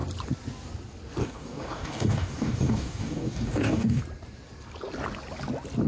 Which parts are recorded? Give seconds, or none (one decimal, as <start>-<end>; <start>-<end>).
0.0-1.2; 4.0-5.9